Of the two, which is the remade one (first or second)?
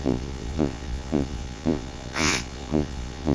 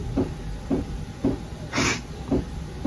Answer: first